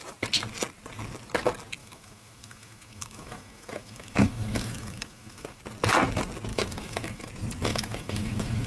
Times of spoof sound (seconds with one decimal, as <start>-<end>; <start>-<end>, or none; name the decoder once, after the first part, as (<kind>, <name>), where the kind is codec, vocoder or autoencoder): 1.8-5.6 (autoencoder, DAC-VAE); 6.5-7.3; 7.7-8.7